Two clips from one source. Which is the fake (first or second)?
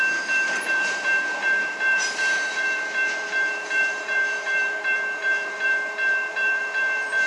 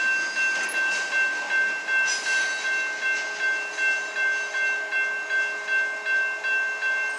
first